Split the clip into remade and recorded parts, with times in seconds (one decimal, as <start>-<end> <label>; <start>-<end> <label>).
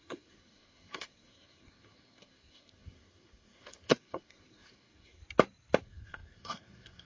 0.0-5.2 remade; 5.2-5.8 recorded; 5.8-7.0 remade